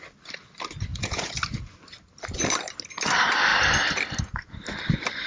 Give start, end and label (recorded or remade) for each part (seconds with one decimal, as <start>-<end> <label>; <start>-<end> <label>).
0.0-0.9 recorded; 0.9-1.4 remade; 1.4-5.3 recorded